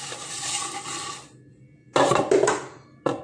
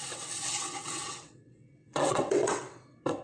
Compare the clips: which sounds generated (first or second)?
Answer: second